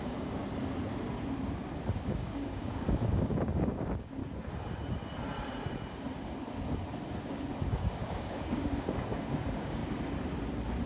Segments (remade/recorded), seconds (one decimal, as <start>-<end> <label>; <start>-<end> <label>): 0.0-0.4 remade; 0.4-1.9 recorded; 1.9-4.2 remade; 4.2-7.7 recorded; 7.7-9.8 remade; 9.8-10.9 recorded